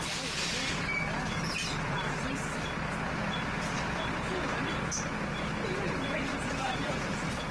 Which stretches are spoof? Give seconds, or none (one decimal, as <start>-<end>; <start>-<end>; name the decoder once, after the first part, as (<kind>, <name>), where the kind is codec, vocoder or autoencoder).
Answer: 6.3-7.5 (vocoder, BigVGAN v2)